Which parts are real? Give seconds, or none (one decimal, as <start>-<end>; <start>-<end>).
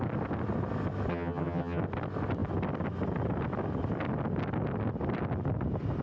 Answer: 0.0-1.1; 1.8-6.0